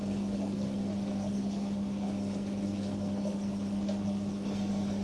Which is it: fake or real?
fake